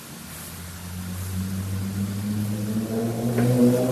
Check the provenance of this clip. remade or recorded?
recorded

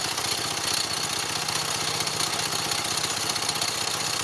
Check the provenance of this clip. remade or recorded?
recorded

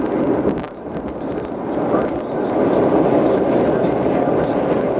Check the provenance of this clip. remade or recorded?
recorded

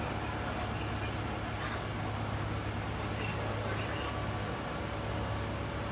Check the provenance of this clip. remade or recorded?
recorded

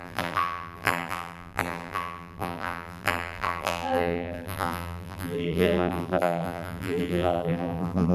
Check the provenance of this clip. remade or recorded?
remade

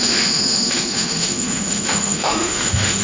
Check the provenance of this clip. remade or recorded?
remade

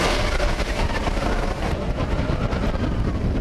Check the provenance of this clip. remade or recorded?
recorded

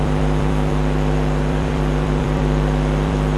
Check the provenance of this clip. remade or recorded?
remade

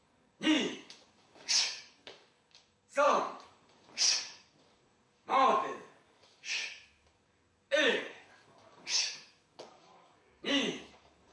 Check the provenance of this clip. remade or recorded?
remade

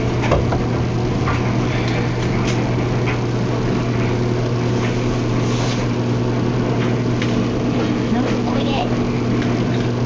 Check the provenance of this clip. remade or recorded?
recorded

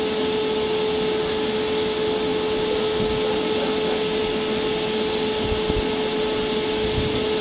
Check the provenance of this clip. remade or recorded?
recorded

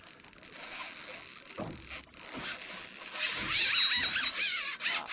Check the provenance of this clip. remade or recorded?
recorded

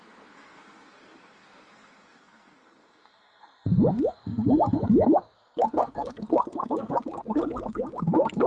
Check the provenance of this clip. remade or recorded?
remade